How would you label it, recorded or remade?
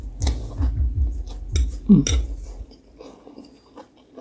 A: recorded